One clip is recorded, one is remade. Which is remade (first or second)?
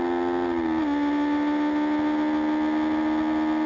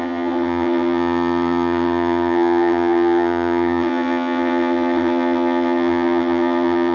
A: second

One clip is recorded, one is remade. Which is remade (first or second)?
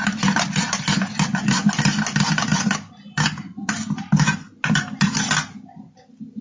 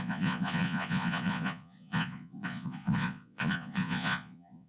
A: second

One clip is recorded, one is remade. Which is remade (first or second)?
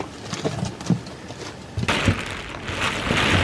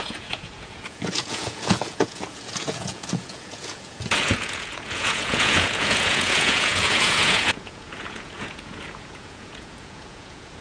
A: second